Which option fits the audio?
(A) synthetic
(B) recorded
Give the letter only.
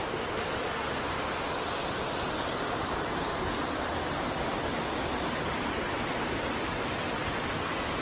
B